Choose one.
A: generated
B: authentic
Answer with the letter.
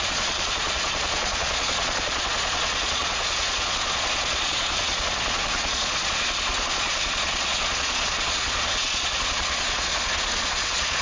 A